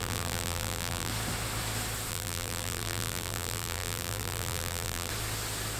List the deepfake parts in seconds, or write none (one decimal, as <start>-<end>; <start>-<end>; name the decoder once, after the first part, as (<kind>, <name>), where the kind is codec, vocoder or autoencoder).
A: 0.0-1.1 (vocoder, BigVGAN v2); 2.1-5.1